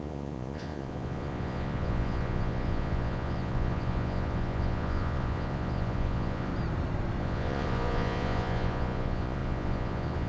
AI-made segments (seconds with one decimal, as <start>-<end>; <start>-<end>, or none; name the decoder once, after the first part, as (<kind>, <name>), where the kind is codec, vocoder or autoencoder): 0.0-6.5 (vocoder, Vocos); 7.2-10.3